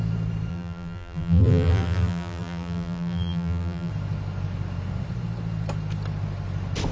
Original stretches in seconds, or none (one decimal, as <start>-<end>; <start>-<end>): 0.0-0.5; 3.9-6.9